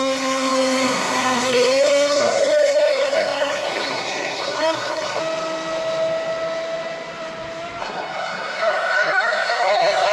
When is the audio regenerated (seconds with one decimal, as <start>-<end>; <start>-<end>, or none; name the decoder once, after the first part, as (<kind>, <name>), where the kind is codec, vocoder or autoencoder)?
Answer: 0.0-5.2 (codec, SNAC); 7.8-10.1